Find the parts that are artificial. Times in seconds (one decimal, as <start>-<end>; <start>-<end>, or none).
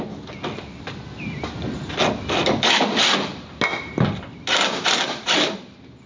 none